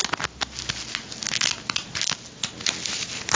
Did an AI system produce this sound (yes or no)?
no